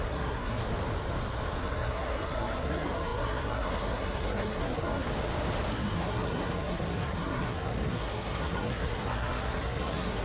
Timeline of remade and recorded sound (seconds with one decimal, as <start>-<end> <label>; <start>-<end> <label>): 0.0-0.6 remade; 0.6-1.6 recorded; 1.6-5.1 remade; 5.1-5.7 recorded; 5.7-10.2 remade